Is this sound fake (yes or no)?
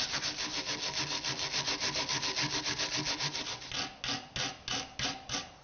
no